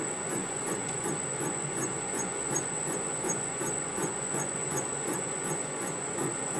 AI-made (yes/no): yes